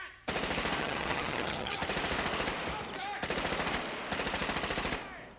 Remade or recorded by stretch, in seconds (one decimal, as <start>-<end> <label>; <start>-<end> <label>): 0.0-0.8 recorded; 0.8-1.8 remade; 1.8-5.4 recorded